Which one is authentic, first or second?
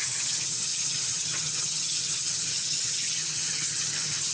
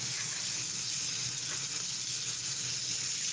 second